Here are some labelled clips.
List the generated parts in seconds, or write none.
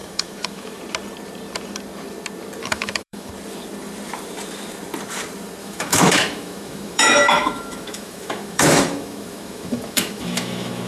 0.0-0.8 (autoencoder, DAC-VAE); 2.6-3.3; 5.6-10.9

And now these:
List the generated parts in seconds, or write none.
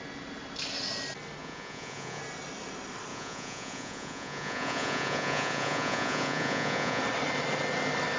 1.4-2.2 (vocoder, Vocos); 3.1-7.0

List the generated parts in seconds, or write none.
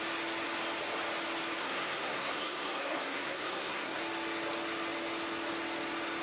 1.6-4.0 (codec, SNAC)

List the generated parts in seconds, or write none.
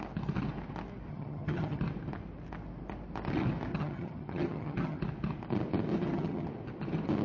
1.1-1.8 (vocoder, HiFi-GAN); 3.7-5.0; 5.9-6.5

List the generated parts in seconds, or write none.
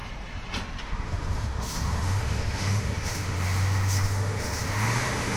0.8-5.4 (autoencoder, DAC-VAE)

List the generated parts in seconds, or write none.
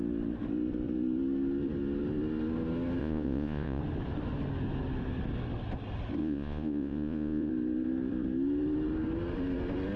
3.0-3.8 (vocoder, Vocos); 6.2-7.5